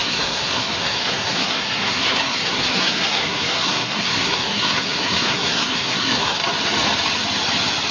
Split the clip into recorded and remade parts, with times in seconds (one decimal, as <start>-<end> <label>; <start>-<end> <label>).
0.0-6.4 remade; 6.4-7.9 recorded